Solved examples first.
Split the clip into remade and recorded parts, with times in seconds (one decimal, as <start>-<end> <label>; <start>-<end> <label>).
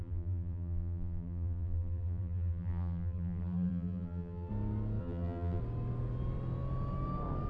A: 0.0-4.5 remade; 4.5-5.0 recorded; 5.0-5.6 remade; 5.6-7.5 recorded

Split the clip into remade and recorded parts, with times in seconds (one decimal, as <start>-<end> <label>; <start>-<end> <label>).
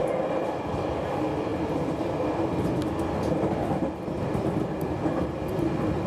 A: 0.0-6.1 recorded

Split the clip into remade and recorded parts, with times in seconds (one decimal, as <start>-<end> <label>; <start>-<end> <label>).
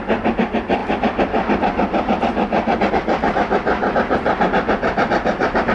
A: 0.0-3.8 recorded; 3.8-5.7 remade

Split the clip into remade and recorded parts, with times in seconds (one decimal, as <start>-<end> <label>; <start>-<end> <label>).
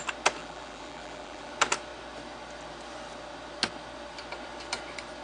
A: 0.0-0.4 recorded; 0.4-1.5 remade; 1.5-5.2 recorded